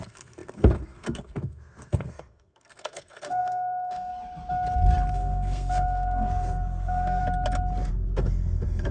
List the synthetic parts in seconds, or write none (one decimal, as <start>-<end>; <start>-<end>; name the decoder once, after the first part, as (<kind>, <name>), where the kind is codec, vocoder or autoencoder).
0.0-4.1 (codec, SNAC); 5.1-7.2; 7.9-8.9